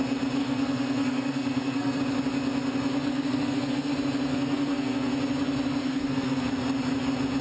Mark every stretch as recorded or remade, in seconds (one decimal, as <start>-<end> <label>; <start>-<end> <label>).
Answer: 0.0-0.4 recorded; 0.4-2.0 remade; 2.0-3.1 recorded; 3.1-3.9 remade; 3.9-4.3 recorded; 4.3-5.1 remade; 5.1-5.8 recorded; 5.8-6.5 remade; 6.5-7.4 recorded